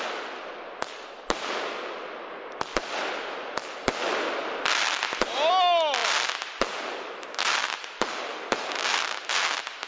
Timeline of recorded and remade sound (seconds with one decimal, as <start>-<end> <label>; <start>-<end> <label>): 0.0-9.9 recorded